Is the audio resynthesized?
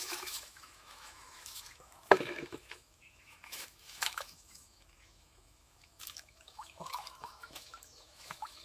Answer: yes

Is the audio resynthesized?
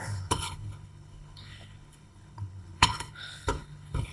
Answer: yes